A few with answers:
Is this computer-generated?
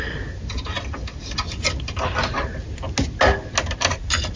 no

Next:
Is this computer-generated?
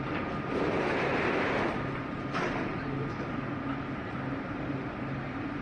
no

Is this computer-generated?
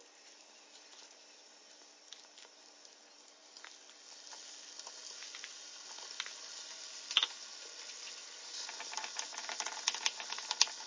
no